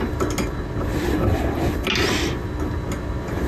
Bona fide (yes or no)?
yes